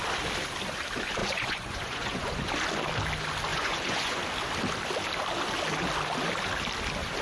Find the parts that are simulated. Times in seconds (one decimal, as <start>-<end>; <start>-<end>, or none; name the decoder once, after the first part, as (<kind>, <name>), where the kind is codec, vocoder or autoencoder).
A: 1.2-2.5 (vocoder, Vocos); 3.5-4.2